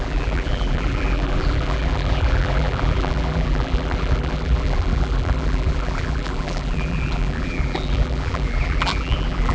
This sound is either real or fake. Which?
fake